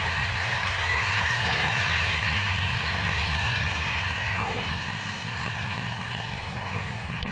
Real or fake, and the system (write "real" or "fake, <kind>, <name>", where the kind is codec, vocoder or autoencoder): fake, codec, SNAC